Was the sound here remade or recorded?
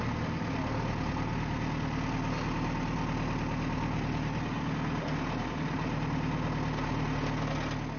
recorded